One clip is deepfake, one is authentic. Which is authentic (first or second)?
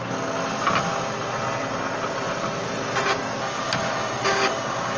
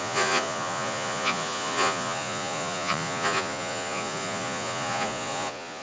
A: first